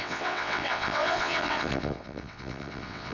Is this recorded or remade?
remade